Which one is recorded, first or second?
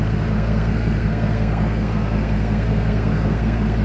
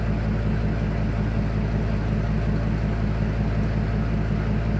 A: second